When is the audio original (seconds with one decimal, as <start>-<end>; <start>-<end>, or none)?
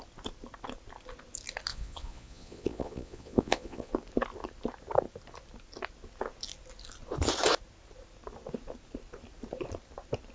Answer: 0.0-1.7; 3.9-10.3